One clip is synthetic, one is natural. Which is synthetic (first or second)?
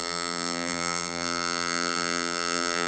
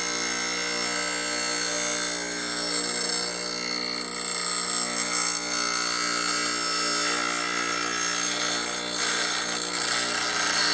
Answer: first